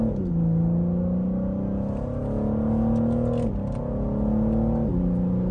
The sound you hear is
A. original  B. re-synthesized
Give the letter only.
A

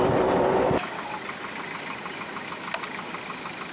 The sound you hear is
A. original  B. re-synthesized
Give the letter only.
A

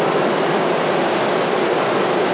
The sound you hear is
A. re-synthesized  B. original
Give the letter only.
B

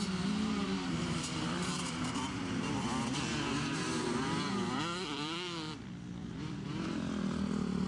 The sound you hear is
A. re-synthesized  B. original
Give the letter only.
A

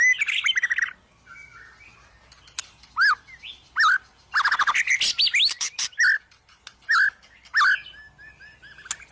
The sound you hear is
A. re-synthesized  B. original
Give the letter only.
B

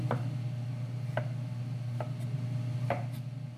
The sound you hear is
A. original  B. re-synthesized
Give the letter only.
A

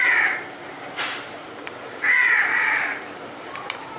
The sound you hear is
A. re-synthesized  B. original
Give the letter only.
A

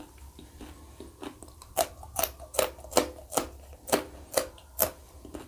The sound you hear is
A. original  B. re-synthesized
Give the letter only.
B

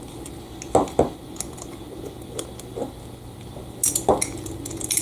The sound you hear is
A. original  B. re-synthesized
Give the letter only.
A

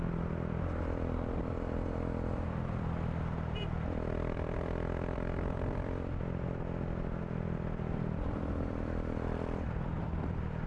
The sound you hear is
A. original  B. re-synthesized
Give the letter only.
B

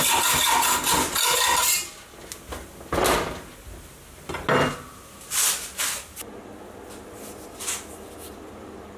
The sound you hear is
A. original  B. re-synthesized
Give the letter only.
A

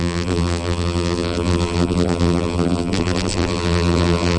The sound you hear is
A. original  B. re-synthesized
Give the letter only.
B